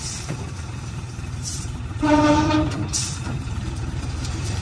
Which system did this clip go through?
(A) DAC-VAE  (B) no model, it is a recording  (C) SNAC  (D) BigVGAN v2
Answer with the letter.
D